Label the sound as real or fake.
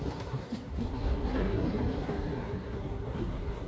fake